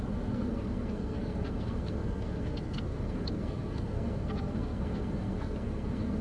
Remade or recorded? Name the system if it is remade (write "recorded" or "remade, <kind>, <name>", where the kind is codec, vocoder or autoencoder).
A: remade, codec, SNAC